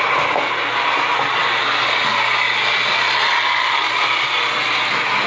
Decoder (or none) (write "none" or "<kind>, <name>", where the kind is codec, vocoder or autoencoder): none